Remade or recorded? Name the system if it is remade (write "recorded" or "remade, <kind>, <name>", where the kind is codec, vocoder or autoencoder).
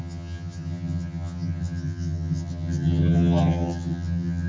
remade, vocoder, HiFi-GAN